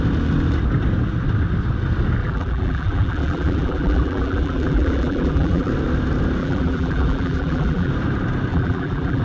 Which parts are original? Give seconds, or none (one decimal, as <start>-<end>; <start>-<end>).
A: 0.0-2.2; 5.7-6.4; 7.9-8.5